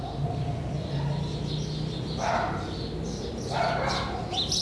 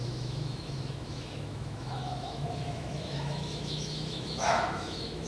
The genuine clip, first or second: first